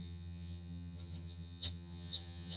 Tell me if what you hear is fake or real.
fake